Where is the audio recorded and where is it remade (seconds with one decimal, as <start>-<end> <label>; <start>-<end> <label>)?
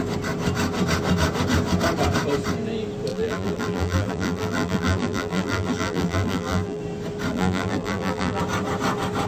0.0-3.1 recorded; 3.1-6.8 remade; 6.8-7.3 recorded; 7.3-8.4 remade; 8.4-9.3 recorded